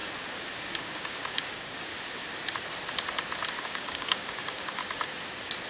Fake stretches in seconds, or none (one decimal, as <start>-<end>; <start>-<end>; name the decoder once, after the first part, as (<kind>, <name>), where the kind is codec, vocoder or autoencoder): 0.8-1.9 (codec, DAC); 3.6-4.8